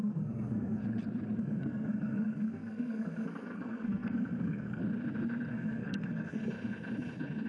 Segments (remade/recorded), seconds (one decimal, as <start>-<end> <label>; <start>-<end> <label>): 0.0-0.8 remade; 0.8-1.4 recorded; 1.4-4.8 remade; 4.8-5.5 recorded; 5.5-6.4 remade; 6.4-7.5 recorded